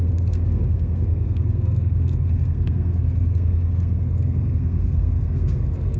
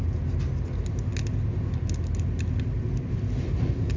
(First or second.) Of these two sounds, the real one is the second